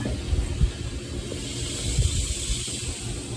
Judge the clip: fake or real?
real